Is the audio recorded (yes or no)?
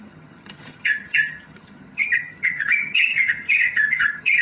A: no